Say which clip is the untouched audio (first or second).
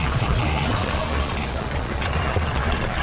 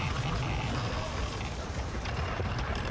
second